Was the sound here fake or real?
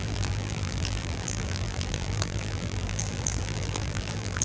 fake